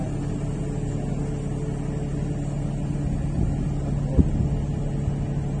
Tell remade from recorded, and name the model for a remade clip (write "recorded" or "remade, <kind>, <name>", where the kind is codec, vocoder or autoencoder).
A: recorded